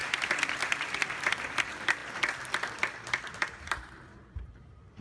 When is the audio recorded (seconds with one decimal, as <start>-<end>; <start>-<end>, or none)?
0.0-1.6; 2.0-2.7